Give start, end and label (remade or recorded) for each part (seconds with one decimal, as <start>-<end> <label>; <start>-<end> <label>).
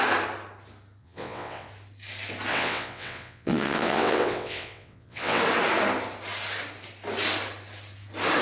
0.0-1.0 recorded; 1.0-1.7 remade; 1.7-2.5 recorded; 2.5-5.4 remade; 5.4-8.4 recorded